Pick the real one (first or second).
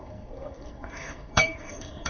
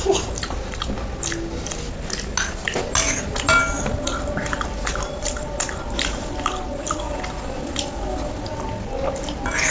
second